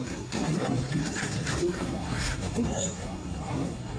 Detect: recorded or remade remade